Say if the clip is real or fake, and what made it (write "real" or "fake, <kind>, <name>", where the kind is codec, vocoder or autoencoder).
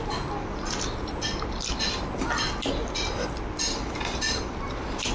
real